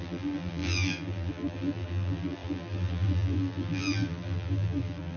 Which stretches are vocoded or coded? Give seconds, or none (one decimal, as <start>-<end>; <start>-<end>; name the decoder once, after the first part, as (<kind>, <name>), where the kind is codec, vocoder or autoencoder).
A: 0.0-5.2 (vocoder, BigVGAN v2)

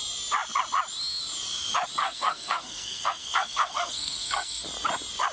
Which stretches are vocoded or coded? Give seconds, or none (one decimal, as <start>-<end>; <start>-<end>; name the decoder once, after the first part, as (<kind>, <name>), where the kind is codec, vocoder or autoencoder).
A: 2.0-4.6 (codec, SNAC)

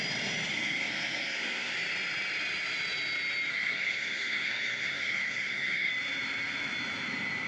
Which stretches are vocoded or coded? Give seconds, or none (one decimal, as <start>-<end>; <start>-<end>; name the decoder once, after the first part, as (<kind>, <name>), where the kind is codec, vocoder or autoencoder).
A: 0.5-1.7 (codec, SNAC); 3.5-5.9

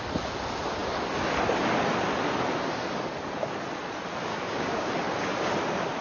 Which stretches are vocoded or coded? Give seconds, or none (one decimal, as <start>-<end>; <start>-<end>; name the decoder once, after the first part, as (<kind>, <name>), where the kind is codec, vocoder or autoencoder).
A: 4.3-4.9 (codec, DAC)

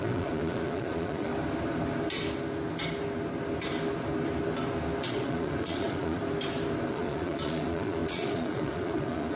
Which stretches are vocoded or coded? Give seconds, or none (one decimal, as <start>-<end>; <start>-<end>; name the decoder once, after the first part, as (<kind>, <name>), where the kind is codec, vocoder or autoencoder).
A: 0.0-1.3 (vocoder, Vocos); 5.0-6.2; 6.9-9.4

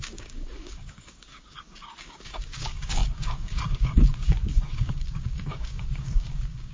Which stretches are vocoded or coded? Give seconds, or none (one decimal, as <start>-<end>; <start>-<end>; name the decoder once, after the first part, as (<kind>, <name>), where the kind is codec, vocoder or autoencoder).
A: 0.0-6.7 (codec, DAC)